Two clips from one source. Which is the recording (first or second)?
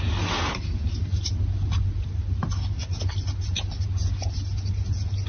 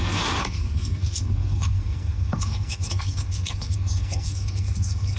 first